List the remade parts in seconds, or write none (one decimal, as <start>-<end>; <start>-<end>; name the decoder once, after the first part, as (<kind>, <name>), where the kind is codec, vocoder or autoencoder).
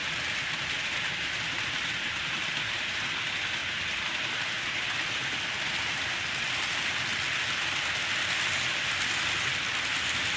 none